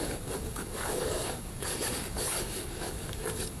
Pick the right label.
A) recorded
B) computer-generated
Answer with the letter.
B